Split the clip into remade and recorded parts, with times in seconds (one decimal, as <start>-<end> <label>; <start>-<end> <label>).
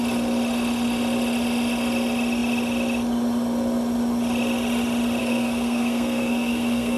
0.0-5.2 recorded; 5.2-7.0 remade